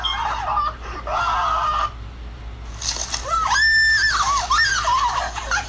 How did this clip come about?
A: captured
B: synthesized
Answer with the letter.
A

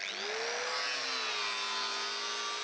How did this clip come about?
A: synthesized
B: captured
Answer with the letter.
B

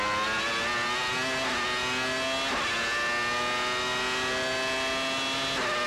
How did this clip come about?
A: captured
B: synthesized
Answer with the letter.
A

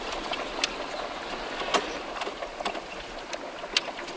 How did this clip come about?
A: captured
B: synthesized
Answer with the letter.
A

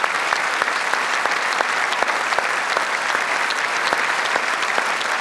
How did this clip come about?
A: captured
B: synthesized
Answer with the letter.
A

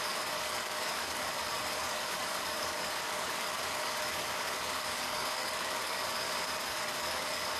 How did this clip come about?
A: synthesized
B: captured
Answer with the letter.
A